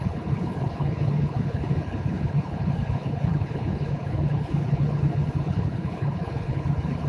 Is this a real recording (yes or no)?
no